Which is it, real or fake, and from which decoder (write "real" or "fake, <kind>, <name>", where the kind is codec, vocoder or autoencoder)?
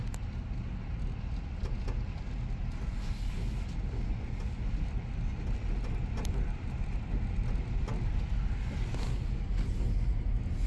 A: real